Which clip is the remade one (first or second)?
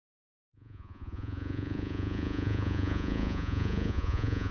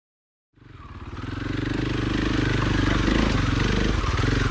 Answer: first